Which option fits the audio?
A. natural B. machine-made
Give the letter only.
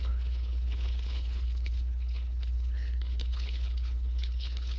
B